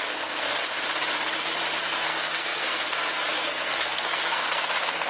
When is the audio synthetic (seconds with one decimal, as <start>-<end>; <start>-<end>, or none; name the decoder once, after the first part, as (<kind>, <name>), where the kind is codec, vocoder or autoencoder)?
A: 0.0-0.6 (codec, SNAC); 1.9-5.1